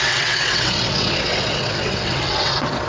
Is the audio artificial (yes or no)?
yes